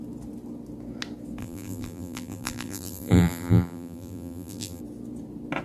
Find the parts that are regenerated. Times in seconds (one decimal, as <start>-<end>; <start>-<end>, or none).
1.4-4.8